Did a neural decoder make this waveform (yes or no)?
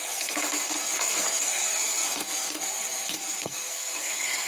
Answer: yes